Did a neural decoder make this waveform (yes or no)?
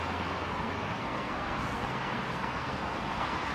yes